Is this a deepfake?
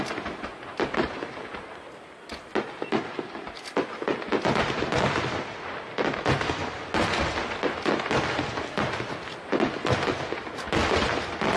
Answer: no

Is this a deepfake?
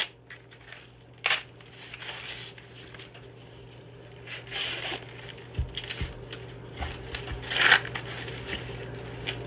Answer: no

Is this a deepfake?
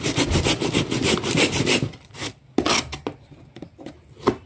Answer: no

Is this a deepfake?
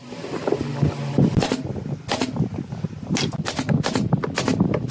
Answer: no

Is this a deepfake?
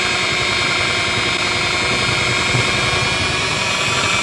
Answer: no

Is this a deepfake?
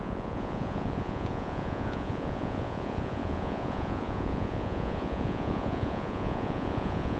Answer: yes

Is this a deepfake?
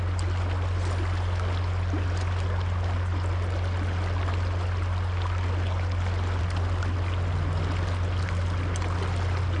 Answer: no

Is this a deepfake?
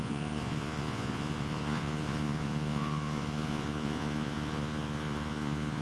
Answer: yes